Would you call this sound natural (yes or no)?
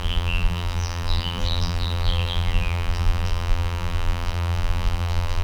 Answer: no